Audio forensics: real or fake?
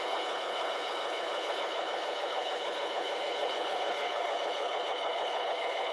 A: fake